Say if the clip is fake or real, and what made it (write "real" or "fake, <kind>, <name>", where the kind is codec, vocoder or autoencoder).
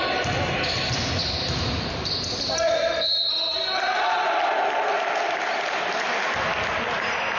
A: real